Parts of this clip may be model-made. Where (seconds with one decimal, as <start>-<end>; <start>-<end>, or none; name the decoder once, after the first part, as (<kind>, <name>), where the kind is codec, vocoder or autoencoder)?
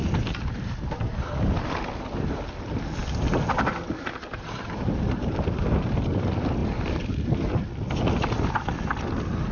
none